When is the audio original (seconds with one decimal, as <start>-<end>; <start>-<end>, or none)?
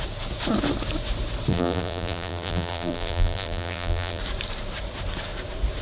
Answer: 0.0-1.5; 4.2-5.8